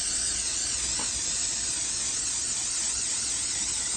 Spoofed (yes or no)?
no